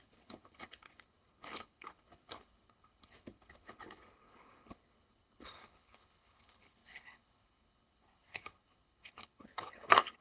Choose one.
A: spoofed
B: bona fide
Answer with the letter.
A